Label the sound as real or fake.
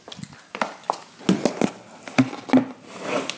real